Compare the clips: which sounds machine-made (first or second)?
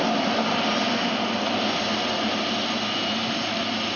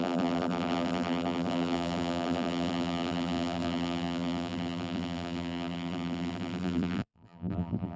second